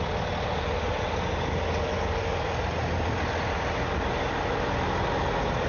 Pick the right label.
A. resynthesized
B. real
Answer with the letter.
B